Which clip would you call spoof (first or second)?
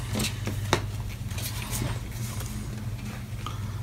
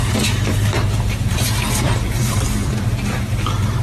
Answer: second